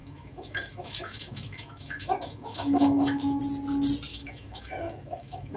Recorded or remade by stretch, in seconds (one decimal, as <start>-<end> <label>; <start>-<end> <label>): 0.0-3.4 remade; 3.4-4.1 recorded; 4.1-5.6 remade